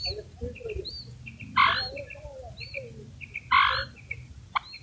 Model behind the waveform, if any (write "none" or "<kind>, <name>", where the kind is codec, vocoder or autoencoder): none